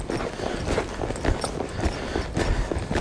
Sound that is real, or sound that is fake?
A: real